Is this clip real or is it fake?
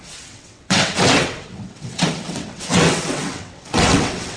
fake